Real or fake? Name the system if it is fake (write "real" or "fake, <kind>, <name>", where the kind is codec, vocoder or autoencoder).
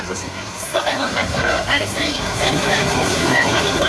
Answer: fake, codec, SNAC